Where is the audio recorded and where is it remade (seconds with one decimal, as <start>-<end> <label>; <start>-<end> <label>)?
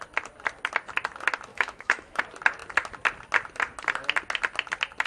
0.0-1.5 recorded; 1.5-2.2 remade; 2.2-5.1 recorded